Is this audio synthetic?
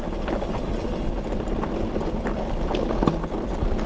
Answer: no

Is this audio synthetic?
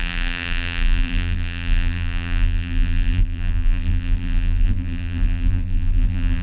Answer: yes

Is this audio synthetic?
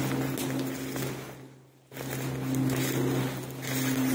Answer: no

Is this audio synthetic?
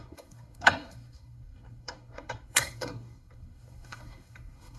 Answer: yes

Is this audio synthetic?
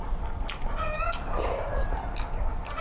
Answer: no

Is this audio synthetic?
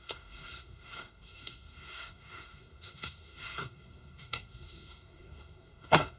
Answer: yes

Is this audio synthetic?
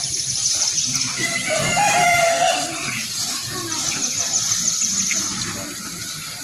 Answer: no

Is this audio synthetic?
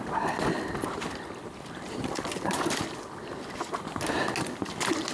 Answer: no